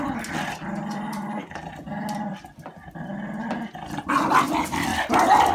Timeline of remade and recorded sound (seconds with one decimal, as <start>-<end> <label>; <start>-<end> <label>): 0.0-5.5 recorded